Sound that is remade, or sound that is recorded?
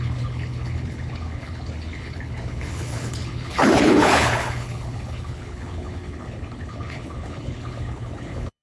remade